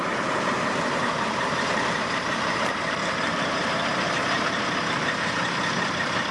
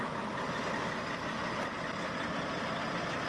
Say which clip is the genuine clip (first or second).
second